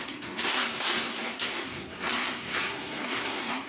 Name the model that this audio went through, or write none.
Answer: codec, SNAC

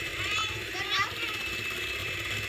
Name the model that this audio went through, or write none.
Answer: none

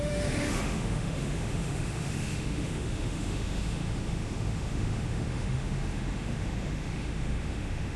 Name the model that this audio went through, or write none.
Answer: autoencoder, DAC-VAE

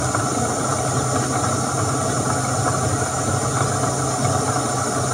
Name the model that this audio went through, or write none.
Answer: none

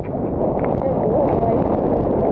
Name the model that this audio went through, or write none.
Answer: none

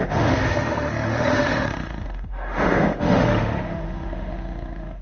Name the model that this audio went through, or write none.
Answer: autoencoder, DAC-VAE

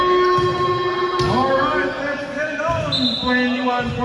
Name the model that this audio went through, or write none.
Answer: none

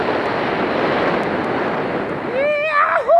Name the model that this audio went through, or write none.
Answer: none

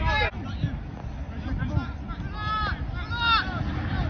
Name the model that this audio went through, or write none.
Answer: none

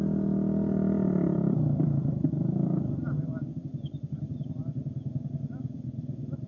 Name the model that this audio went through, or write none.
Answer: none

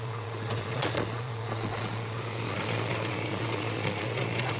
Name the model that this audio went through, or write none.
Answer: vocoder, Vocos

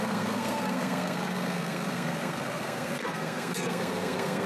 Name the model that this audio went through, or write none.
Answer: codec, SNAC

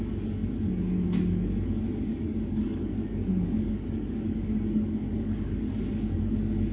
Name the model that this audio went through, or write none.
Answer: codec, DAC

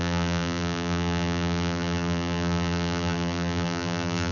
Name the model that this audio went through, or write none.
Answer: vocoder, BigVGAN v2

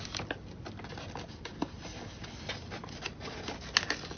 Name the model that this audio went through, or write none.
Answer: none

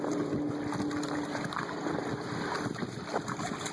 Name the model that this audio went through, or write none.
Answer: none